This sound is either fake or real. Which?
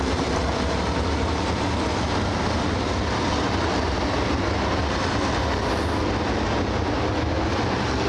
real